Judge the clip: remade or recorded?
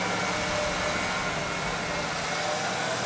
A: recorded